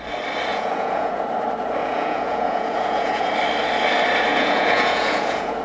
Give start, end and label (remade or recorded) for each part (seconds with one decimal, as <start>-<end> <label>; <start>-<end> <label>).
0.0-0.5 recorded; 0.5-1.2 remade; 1.2-1.8 recorded; 1.8-3.3 remade; 3.3-4.3 recorded; 4.3-5.6 remade